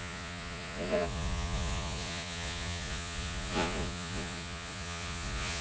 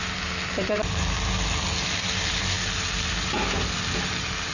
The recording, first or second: second